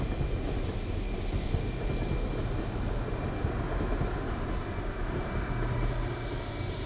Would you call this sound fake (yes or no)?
no